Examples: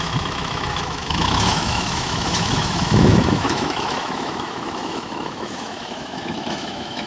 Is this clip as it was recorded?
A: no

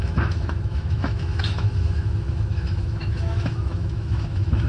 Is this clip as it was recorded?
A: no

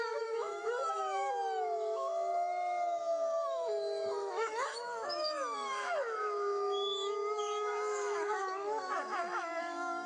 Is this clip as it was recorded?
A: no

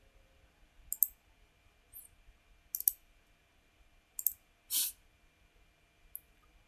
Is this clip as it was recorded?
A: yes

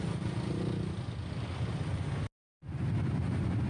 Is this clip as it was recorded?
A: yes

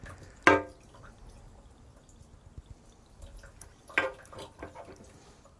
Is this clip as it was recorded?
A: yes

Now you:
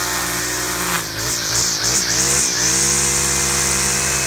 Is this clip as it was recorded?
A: yes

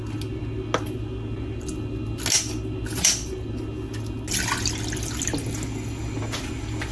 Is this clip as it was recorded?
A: yes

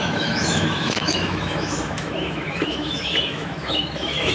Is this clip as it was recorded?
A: no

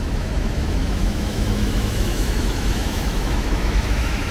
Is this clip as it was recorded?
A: no